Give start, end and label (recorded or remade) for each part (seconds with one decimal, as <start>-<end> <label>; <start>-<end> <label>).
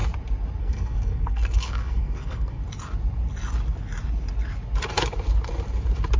0.0-0.6 recorded; 0.6-2.6 remade; 2.6-6.2 recorded